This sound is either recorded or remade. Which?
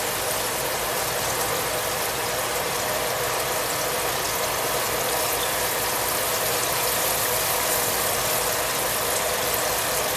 recorded